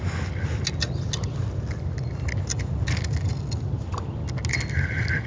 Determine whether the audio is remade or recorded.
recorded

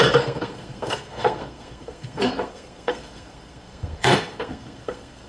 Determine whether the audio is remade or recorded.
remade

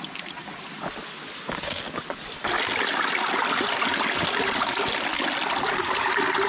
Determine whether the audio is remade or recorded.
recorded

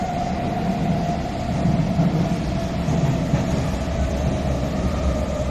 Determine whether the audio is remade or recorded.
recorded